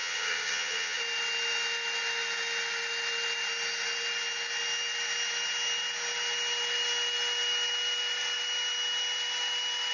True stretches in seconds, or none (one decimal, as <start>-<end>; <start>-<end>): 1.0-9.9